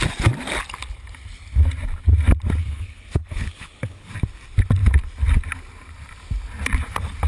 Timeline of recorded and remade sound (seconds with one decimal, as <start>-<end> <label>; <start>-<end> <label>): 0.0-2.6 recorded; 2.6-4.1 remade; 4.1-7.3 recorded